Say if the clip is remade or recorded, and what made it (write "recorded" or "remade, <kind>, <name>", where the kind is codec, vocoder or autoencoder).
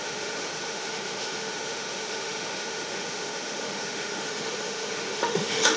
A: remade, autoencoder, DAC-VAE